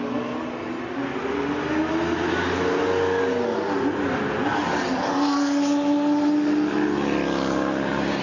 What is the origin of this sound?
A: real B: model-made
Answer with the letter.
A